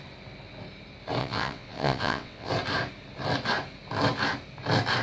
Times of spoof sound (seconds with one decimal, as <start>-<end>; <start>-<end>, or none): 1.2-2.5